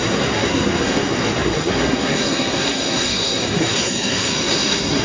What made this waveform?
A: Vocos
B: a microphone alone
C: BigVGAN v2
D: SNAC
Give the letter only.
D